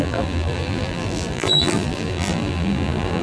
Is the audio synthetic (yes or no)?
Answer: yes